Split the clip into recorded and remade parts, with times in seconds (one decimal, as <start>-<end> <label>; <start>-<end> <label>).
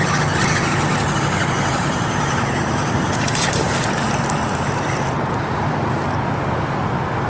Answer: 0.0-0.4 recorded; 0.4-1.0 remade; 1.0-1.7 recorded; 1.7-5.6 remade; 5.6-7.3 recorded